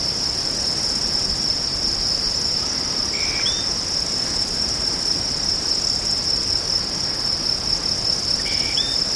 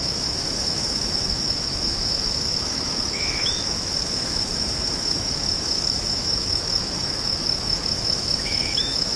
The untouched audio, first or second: first